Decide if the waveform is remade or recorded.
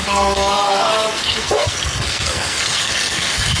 remade